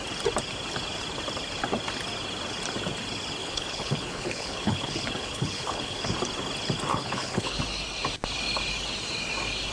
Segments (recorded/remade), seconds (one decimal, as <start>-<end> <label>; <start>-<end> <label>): 0.0-3.4 recorded; 3.4-6.1 remade; 6.1-6.9 recorded; 6.9-7.6 remade; 7.6-9.7 recorded